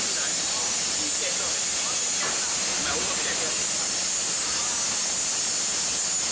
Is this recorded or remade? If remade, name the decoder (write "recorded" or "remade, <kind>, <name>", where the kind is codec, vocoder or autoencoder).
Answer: recorded